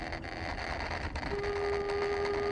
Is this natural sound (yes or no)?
yes